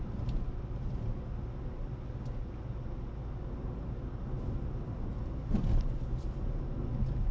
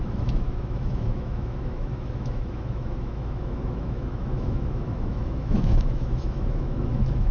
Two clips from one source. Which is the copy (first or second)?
second